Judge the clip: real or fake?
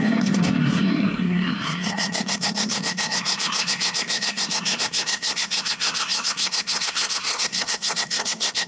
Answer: fake